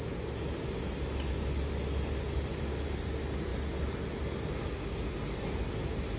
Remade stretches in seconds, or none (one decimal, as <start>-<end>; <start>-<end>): none